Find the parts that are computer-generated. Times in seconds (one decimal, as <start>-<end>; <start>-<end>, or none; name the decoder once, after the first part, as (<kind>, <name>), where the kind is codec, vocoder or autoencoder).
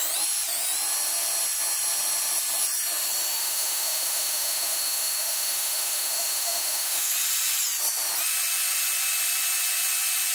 3.4-7.1 (autoencoder, DAC-VAE)